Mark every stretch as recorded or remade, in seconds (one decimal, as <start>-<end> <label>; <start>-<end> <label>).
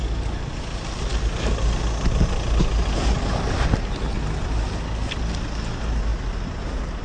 0.0-7.0 recorded